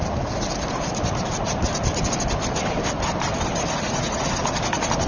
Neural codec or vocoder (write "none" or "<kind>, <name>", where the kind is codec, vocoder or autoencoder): none